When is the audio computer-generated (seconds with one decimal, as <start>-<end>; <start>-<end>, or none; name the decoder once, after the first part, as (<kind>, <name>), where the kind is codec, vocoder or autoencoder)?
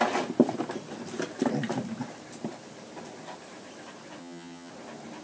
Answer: 4.2-4.7 (vocoder, HiFi-GAN)